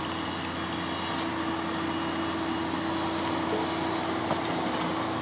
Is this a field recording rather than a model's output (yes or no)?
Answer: yes